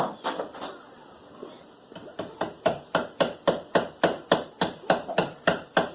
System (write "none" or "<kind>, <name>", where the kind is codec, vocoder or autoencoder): none